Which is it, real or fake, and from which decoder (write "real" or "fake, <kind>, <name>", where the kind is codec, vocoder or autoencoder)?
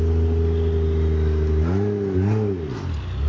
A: real